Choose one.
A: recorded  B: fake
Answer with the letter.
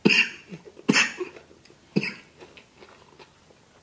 A